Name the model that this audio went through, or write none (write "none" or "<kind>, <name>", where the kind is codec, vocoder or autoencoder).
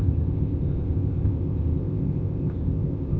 codec, ZipCodec